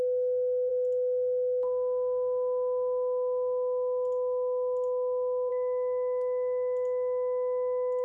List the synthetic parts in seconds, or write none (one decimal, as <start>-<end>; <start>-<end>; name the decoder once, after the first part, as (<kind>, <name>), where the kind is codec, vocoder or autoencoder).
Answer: none